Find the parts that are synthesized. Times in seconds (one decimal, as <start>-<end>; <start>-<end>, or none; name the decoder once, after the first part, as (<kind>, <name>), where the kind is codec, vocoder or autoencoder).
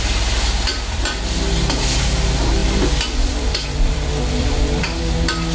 0.7-1.2 (vocoder, BigVGAN v2); 2.6-5.0